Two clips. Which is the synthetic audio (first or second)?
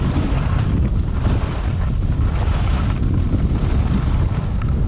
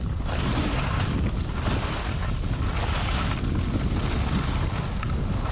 first